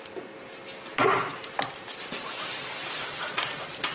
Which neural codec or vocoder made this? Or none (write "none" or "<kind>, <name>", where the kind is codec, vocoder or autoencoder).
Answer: none